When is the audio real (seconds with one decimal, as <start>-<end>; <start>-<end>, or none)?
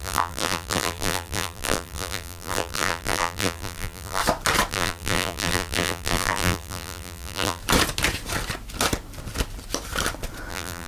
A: 4.2-4.7; 7.6-10.5